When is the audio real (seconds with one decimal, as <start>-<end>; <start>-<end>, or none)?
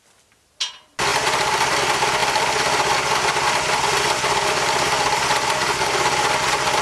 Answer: 0.0-1.1; 1.8-2.2; 6.3-6.8